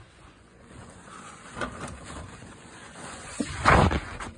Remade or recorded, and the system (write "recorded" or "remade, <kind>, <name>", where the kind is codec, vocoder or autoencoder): remade, vocoder, Vocos